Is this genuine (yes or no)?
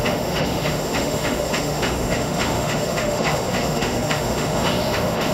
no